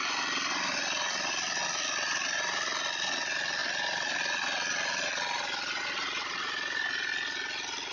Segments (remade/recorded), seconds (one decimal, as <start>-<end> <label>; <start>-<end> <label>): 0.0-7.9 recorded